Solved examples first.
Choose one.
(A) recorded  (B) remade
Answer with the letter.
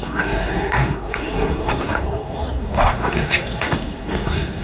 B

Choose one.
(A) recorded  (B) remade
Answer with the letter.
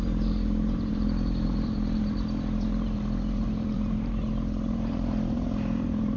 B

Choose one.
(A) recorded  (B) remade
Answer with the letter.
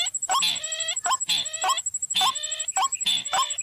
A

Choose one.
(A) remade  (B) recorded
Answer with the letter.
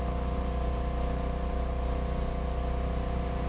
B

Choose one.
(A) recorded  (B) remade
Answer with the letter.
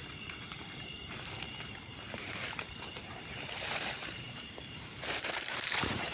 B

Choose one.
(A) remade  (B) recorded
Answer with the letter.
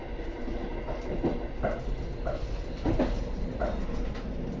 B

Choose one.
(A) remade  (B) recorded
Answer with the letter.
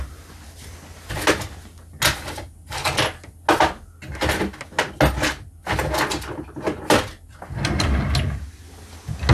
B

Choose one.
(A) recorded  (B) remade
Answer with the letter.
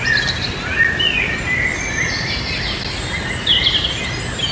A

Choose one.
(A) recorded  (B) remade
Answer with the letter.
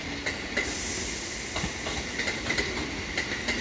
A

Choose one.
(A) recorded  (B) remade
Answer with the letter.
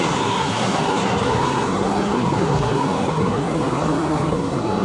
B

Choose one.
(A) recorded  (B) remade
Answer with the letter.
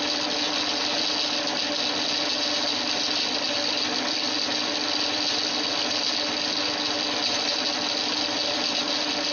A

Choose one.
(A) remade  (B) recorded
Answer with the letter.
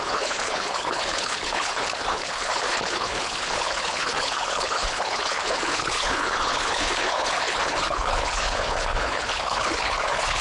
A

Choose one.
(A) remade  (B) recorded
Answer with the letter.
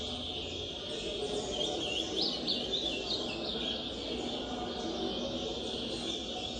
B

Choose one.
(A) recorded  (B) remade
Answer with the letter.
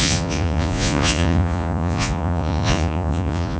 B